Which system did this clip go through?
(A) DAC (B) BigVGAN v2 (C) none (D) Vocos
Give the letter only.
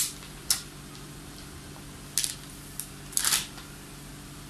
C